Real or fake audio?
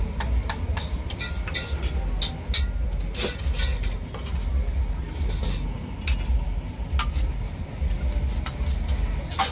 real